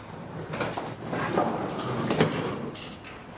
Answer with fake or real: real